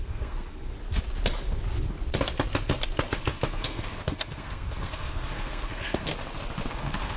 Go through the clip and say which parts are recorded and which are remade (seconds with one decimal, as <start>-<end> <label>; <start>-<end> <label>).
0.0-0.7 remade; 0.7-3.1 recorded; 3.1-6.1 remade; 6.1-6.7 recorded; 6.7-7.2 remade